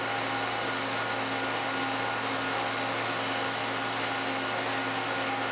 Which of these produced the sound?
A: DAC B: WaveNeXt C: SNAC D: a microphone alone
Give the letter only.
D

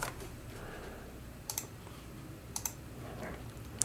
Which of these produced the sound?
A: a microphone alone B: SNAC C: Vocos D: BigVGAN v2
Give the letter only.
D